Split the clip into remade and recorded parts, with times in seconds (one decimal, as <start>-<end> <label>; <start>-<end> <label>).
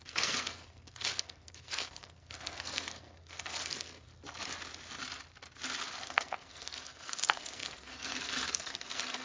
0.0-4.1 remade; 4.1-6.0 recorded; 6.0-9.2 remade